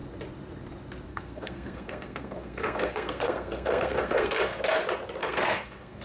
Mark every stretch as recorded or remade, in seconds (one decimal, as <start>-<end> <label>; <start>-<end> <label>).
0.0-1.1 recorded; 1.1-4.6 remade; 4.6-5.2 recorded; 5.2-6.0 remade